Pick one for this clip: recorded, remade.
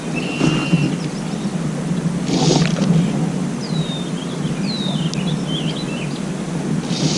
recorded